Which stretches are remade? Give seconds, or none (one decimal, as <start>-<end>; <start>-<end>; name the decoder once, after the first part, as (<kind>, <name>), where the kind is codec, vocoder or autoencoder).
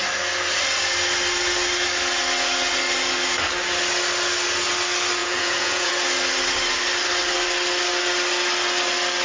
5.2-5.9 (vocoder, Vocos)